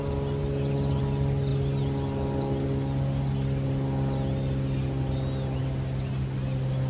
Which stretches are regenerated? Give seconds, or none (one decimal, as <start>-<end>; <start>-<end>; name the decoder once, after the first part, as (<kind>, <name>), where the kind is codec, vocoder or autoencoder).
none